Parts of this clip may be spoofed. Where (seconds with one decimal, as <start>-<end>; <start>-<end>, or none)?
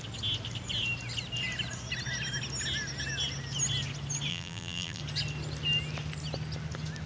4.3-5.0